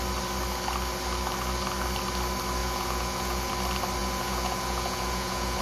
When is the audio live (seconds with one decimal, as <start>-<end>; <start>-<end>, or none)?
0.0-2.6; 3.5-4.0